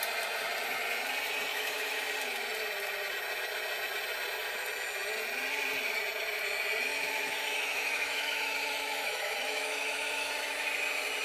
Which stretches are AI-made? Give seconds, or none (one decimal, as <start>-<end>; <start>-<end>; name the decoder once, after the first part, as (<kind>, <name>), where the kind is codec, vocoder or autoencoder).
1.5-2.0 (autoencoder, DAC-VAE); 6.9-10.3